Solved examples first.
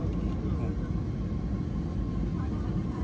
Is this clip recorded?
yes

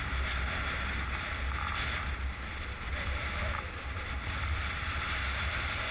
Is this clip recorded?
yes